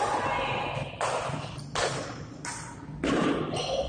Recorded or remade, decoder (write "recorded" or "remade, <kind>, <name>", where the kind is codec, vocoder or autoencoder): recorded